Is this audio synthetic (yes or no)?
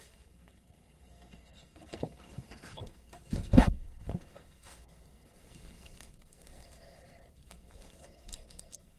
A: yes